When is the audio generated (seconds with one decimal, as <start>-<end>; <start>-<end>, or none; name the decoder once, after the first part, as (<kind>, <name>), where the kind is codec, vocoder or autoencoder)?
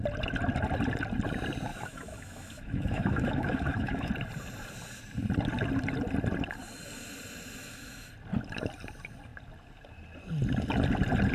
1.7-4.1 (autoencoder, DAC-VAE); 7.6-8.1